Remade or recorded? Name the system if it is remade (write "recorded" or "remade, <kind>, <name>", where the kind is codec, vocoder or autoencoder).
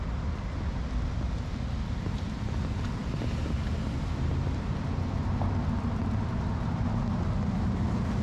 recorded